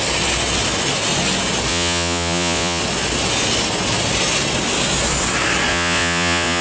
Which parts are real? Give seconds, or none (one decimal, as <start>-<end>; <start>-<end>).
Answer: 0.0-1.7; 2.8-5.7